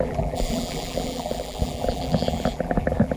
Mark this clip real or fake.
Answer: fake